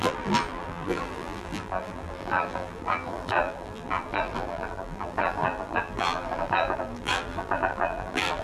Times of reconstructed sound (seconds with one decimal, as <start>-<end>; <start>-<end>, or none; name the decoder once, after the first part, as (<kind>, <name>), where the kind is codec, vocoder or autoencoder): 0.0-8.4 (vocoder, BigVGAN v2)